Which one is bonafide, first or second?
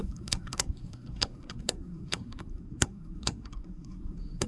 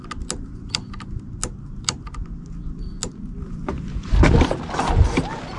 second